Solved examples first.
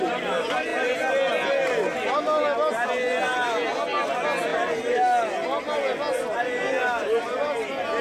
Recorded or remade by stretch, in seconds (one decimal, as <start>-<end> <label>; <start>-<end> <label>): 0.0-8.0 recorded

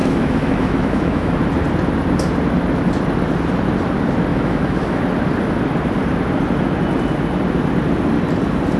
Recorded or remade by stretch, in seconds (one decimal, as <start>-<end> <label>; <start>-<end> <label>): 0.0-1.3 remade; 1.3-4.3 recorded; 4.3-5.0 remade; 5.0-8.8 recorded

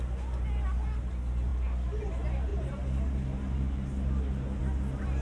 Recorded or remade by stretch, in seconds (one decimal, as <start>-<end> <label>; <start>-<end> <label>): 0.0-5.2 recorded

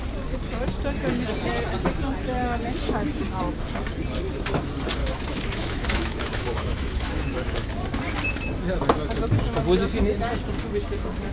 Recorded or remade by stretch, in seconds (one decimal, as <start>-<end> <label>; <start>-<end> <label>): 0.0-5.0 recorded; 5.0-7.7 remade; 7.7-11.3 recorded